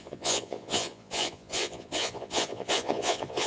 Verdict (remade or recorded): remade